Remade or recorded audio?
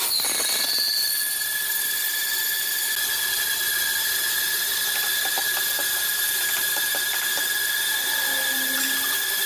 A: recorded